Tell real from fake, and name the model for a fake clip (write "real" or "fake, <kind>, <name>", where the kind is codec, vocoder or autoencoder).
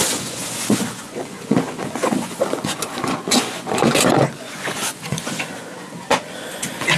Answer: fake, vocoder, Vocos